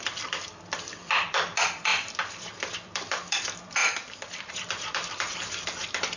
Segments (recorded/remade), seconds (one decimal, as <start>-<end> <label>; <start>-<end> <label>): 0.0-6.2 remade